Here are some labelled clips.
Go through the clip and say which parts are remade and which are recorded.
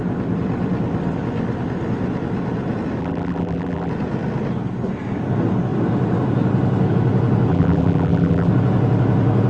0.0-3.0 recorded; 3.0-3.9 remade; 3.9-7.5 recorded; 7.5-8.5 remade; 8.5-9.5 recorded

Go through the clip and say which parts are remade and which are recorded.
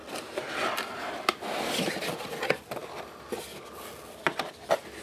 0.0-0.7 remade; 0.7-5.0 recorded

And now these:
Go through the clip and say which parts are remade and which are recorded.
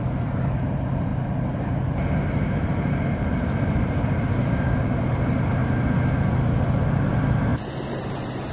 0.0-1.1 remade; 1.1-2.3 recorded; 2.3-5.6 remade; 5.6-6.8 recorded; 6.8-8.5 remade